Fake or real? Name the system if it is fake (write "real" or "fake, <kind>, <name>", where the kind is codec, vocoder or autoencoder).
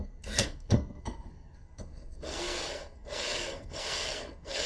fake, codec, SNAC